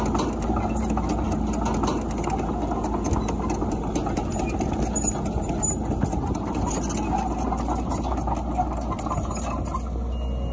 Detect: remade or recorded recorded